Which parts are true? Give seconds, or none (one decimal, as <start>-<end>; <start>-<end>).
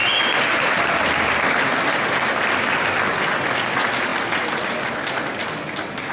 0.0-6.1